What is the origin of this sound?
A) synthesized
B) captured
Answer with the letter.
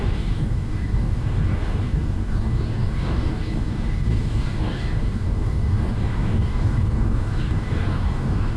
A